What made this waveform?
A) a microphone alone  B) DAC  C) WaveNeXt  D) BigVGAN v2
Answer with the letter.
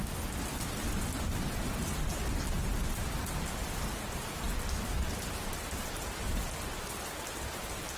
A